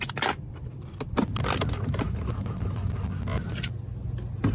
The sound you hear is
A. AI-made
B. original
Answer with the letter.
B